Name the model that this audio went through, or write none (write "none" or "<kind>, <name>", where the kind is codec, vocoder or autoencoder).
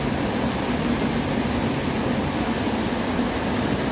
none